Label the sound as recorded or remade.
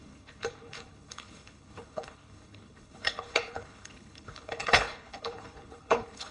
remade